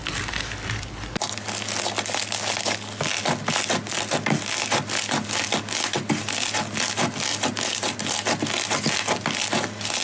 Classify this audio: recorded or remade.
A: recorded